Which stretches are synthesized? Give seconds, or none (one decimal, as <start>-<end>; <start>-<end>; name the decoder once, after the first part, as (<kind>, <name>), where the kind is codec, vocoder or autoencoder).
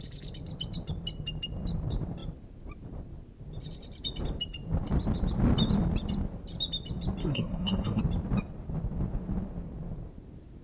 7.2-8.0 (codec, SNAC)